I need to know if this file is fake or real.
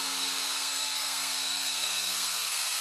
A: fake